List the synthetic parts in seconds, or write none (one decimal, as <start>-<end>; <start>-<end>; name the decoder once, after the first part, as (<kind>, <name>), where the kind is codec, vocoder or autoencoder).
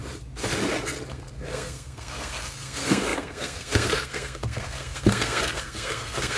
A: 1.1-6.4 (codec, SNAC)